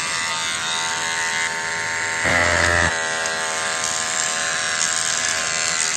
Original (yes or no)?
yes